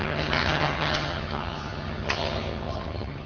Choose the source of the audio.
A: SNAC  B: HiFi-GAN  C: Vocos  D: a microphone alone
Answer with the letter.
B